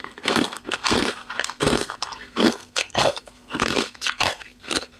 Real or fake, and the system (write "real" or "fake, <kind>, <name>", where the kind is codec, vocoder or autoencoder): fake, codec, SNAC